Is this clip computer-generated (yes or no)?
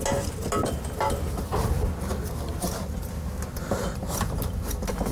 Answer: no